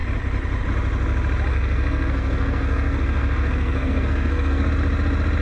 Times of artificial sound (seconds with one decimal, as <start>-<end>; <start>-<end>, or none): 1.5-4.7